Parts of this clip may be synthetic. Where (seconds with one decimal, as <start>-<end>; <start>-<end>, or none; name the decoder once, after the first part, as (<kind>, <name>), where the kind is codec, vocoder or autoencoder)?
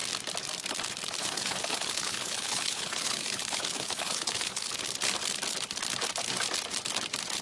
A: 1.2-4.7 (codec, HILCodec)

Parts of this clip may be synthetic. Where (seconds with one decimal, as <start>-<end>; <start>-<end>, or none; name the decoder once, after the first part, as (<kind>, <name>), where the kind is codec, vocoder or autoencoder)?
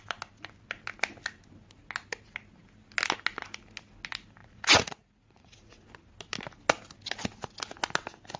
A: 4.4-5.9 (vocoder, Vocos)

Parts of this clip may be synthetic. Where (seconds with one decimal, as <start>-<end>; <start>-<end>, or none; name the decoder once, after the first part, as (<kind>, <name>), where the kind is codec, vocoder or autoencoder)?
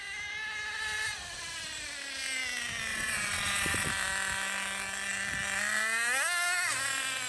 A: 2.9-3.9 (vocoder, Vocos)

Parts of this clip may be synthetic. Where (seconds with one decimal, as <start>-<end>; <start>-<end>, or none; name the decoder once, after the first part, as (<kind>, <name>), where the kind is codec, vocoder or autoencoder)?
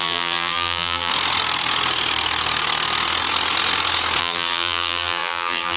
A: 0.0-1.1 (vocoder, BigVGAN v2); 4.2-5.8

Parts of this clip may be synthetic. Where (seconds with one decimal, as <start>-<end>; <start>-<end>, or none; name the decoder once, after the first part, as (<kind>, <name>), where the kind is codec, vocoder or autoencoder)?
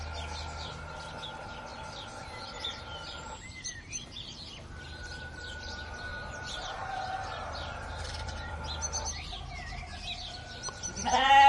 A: 1.7-4.2 (vocoder, BigVGAN v2); 6.1-8.5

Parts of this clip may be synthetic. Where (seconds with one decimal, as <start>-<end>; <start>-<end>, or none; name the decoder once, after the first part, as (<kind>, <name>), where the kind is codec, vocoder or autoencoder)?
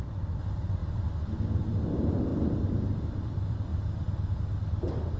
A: 0.0-2.3 (vocoder, BigVGAN v2); 3.0-3.7; 4.3-5.2